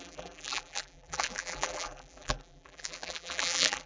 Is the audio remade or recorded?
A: remade